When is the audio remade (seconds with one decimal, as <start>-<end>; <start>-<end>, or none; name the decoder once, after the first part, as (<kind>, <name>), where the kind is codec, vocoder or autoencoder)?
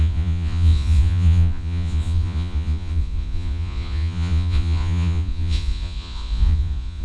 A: 0.0-7.0 (vocoder, Vocos)